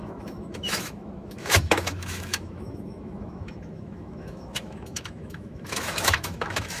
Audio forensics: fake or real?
fake